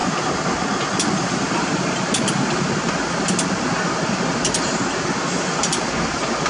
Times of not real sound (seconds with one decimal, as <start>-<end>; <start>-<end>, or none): none